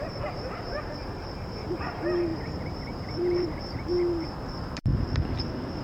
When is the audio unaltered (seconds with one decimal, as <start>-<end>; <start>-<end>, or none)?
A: 4.9-5.8